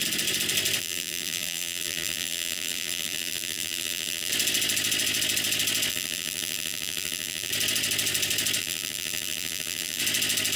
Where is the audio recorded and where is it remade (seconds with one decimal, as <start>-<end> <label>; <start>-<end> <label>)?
0.0-0.8 recorded; 0.8-4.3 remade; 4.3-5.9 recorded; 5.9-7.5 remade; 7.5-8.6 recorded; 8.6-10.0 remade; 10.0-10.6 recorded